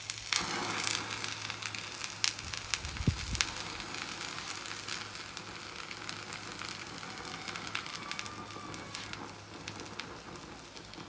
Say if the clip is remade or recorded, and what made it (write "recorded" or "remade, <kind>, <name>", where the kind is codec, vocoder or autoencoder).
recorded